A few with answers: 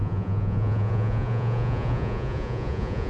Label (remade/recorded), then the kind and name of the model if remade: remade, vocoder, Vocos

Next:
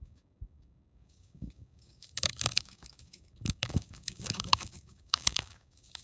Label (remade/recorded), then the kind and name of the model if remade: remade, codec, DAC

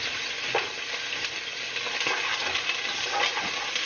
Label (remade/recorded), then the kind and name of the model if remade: recorded